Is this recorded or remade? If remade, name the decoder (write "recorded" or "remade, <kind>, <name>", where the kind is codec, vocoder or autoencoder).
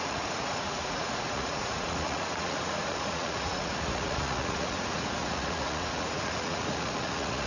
remade, vocoder, Vocos